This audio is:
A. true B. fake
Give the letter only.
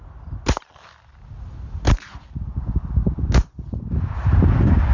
A